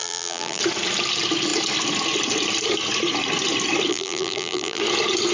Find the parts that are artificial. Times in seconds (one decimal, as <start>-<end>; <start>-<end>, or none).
0.0-0.6; 3.9-4.8